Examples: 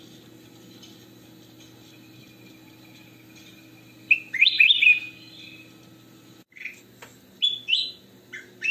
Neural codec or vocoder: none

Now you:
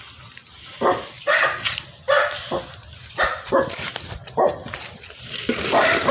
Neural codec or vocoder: none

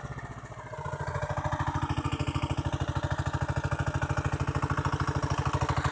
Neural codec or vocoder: none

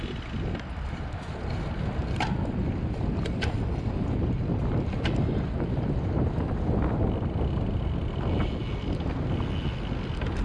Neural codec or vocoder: none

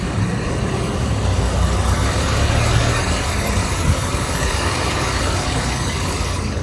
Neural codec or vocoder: codec, DAC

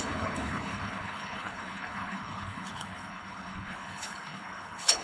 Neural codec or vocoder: codec, HILCodec